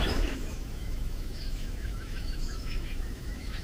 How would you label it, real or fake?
fake